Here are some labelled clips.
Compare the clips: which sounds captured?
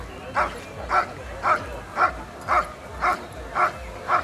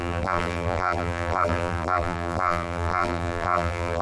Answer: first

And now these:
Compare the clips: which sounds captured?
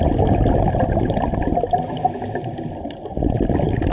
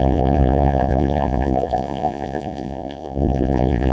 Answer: first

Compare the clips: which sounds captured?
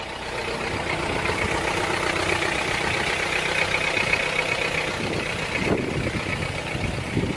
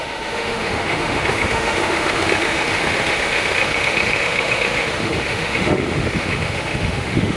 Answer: first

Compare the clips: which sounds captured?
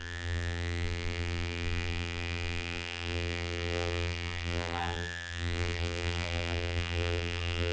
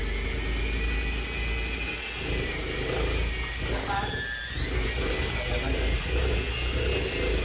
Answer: second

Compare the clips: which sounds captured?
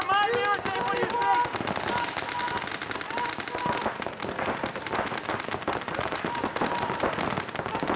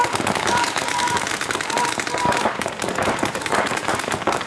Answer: first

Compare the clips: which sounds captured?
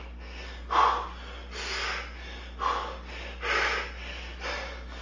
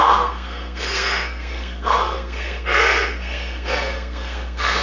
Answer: first